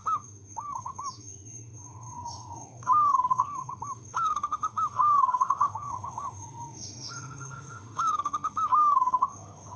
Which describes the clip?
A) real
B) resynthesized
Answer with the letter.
B